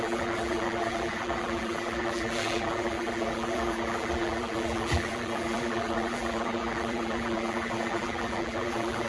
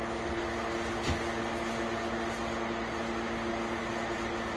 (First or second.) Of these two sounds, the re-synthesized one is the first